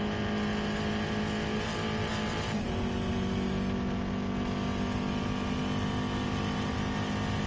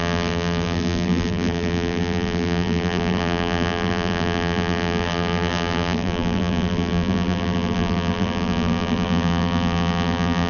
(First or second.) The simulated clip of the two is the second